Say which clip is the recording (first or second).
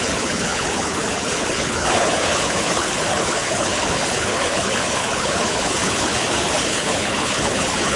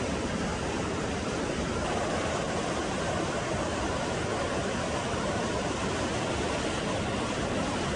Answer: second